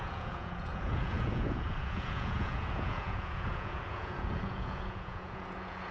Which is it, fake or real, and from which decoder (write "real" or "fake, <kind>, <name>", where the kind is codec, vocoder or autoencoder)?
fake, vocoder, Vocos